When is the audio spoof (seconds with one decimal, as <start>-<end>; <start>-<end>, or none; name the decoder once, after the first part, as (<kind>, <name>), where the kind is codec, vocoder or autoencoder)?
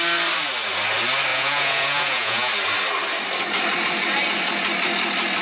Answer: 1.3-2.5 (vocoder, Vocos)